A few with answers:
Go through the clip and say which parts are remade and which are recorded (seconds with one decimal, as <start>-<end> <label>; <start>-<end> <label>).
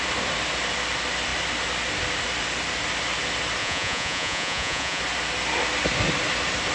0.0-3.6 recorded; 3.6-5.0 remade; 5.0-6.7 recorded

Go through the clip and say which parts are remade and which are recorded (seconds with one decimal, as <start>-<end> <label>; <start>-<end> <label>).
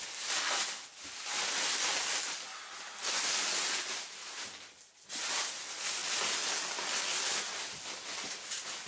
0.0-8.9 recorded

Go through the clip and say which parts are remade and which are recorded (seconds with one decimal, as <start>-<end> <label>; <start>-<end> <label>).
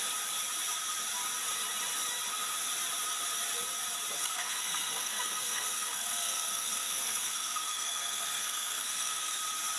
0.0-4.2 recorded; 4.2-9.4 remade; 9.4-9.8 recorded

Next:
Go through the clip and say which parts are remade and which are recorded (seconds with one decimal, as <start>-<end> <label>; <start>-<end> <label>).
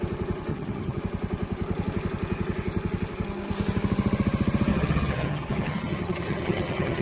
0.0-0.5 recorded; 0.5-1.0 remade; 1.0-4.7 recorded; 4.7-7.0 remade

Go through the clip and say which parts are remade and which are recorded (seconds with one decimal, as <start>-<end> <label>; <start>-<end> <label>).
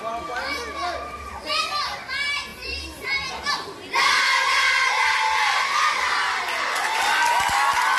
0.0-8.0 recorded